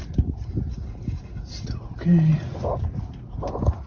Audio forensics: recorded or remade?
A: recorded